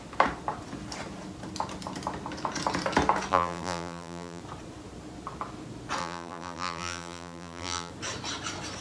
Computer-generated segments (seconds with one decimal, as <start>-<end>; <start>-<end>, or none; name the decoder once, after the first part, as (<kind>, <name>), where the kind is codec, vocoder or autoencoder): 3.3-4.4 (vocoder, BigVGAN v2); 6.0-7.9